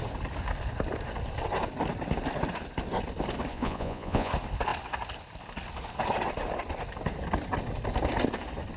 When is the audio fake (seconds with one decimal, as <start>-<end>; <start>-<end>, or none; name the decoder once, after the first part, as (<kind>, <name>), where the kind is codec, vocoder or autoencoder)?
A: 3.5-4.3 (vocoder, Vocos)